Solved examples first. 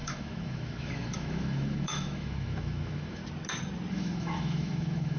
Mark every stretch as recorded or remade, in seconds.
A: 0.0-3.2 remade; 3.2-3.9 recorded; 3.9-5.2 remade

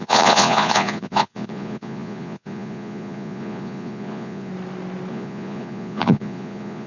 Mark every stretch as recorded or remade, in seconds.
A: 0.0-4.5 remade; 4.5-5.1 recorded; 5.1-6.9 remade

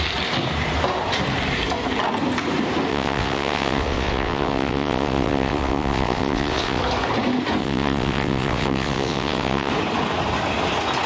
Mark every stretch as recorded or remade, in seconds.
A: 0.0-2.9 recorded; 2.9-6.8 remade; 6.8-7.6 recorded; 7.6-9.7 remade; 9.7-11.1 recorded

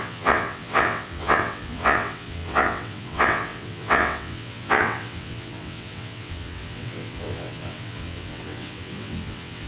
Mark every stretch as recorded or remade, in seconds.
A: 0.0-9.7 remade

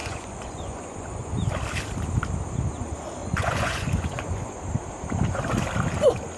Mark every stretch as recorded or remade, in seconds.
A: 0.0-1.3 remade; 1.3-3.2 recorded; 3.2-4.6 remade; 4.6-6.4 recorded